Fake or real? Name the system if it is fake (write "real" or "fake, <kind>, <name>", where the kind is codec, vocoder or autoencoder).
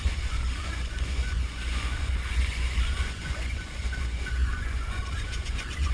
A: fake, vocoder, Vocos